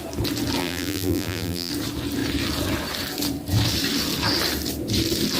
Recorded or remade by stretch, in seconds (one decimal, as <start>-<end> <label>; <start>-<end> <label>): 0.0-0.6 recorded; 0.6-1.7 remade; 1.7-5.4 recorded